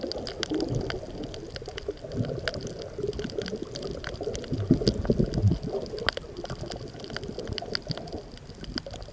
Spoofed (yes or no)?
no